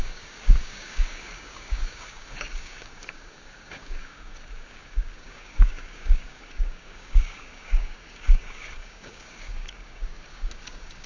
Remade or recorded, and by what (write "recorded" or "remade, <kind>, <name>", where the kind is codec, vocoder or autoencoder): remade, codec, DAC